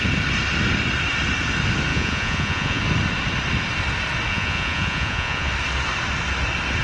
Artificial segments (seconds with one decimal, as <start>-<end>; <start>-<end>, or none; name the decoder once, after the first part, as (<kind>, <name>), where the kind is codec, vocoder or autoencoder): 1.9-2.8 (vocoder, Vocos); 4.3-5.5